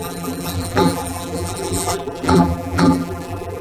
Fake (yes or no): yes